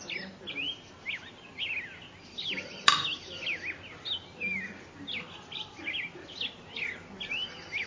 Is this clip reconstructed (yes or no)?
no